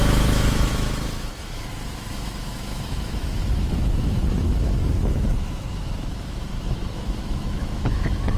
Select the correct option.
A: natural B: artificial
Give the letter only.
B